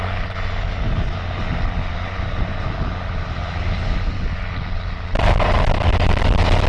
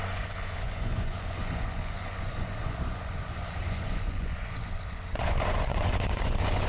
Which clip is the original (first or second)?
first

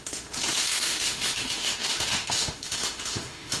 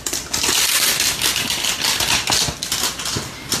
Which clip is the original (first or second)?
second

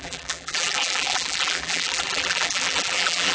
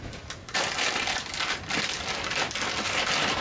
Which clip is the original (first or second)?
second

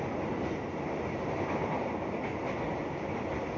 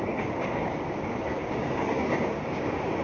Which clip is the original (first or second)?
first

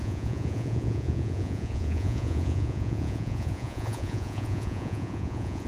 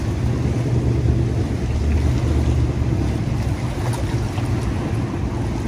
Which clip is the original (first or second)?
second